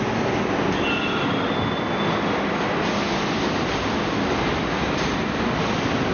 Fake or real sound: real